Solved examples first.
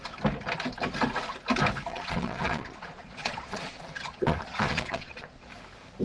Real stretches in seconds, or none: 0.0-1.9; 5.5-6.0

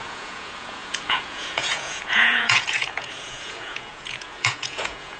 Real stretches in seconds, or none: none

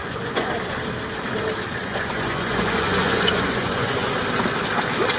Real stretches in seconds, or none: 0.5-1.8; 4.1-5.2

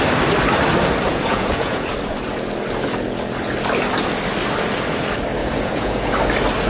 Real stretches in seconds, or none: 0.0-1.1; 1.9-5.4; 6.1-6.7

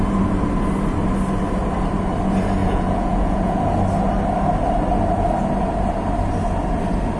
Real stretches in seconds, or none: 0.0-2.6; 3.6-7.2

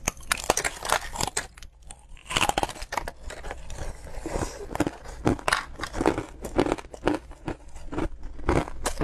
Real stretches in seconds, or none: 0.0-9.0

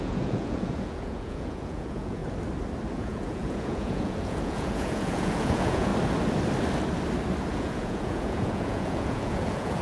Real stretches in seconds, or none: 2.2-2.9; 5.9-7.5